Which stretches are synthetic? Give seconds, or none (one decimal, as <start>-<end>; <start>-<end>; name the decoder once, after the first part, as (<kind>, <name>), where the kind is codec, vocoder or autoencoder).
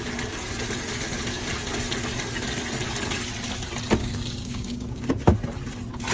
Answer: 4.0-5.1 (codec, DAC)